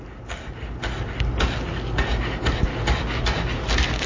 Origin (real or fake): real